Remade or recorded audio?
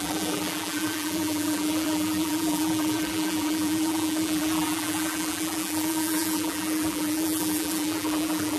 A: remade